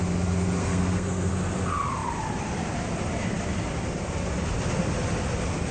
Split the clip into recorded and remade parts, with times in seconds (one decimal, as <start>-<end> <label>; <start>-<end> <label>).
0.0-0.6 recorded; 0.6-1.3 remade; 1.3-5.7 recorded